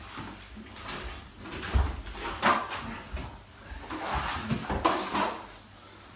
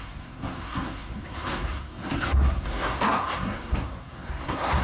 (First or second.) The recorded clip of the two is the first